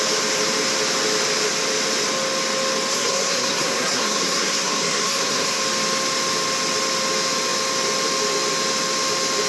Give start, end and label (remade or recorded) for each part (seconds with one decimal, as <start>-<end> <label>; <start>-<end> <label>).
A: 0.0-2.9 recorded; 2.9-5.6 remade; 5.6-9.5 recorded